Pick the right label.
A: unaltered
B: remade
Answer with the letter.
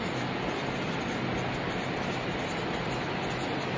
A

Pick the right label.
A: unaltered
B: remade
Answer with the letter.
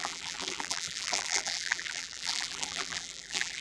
B